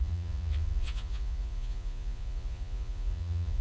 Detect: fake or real fake